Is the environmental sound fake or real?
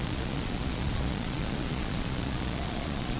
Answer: fake